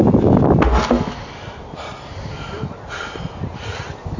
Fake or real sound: real